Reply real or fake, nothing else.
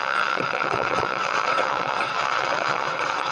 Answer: fake